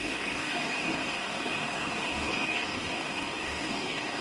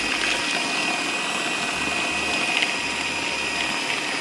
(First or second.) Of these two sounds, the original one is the second